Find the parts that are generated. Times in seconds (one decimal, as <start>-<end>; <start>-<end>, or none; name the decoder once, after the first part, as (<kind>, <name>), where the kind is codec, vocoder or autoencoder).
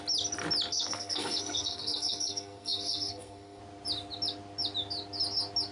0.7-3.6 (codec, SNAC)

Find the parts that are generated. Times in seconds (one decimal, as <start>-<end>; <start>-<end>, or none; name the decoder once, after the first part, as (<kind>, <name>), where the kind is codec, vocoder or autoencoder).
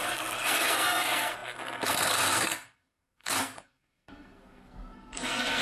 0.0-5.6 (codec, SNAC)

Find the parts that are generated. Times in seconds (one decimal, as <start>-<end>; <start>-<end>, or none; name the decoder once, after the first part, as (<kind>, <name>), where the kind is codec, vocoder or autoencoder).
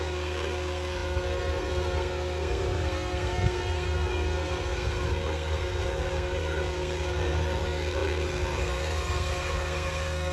0.0-10.3 (codec, SNAC)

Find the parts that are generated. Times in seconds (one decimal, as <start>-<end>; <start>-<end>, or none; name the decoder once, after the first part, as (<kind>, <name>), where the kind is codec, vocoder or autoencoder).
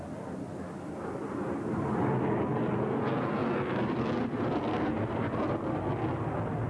none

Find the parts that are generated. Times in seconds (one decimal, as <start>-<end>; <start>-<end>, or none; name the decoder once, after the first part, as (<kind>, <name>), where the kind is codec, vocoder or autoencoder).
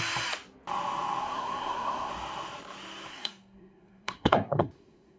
1.2-2.1 (codec, SNAC); 3.1-5.2